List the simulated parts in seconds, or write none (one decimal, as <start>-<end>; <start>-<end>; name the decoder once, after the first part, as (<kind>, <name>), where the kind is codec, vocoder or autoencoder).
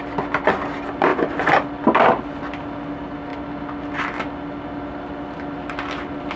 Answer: none